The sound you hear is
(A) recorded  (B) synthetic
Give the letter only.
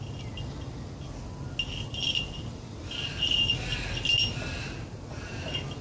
A